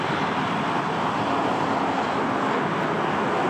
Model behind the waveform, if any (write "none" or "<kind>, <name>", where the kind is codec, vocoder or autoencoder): none